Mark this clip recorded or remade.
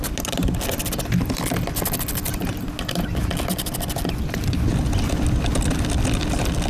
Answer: recorded